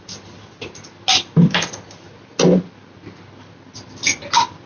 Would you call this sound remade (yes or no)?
no